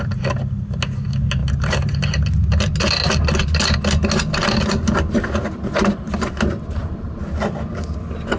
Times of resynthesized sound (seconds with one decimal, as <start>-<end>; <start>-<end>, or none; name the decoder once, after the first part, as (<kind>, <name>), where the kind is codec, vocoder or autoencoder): none